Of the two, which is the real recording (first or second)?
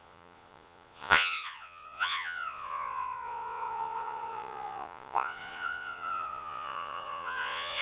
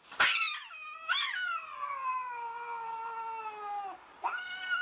second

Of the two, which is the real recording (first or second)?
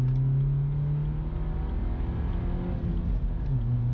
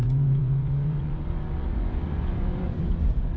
first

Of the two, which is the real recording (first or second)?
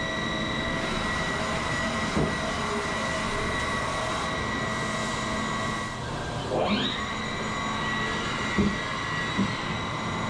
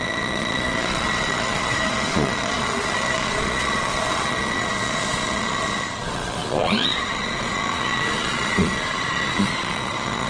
first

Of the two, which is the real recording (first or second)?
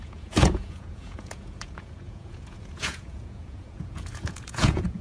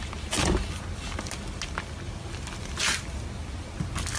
second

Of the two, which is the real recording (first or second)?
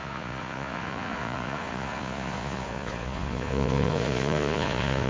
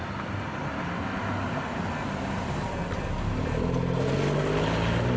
second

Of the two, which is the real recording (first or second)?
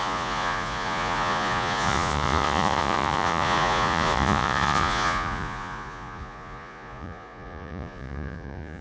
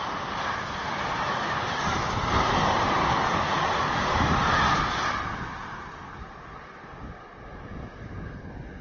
second